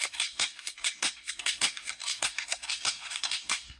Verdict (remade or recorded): remade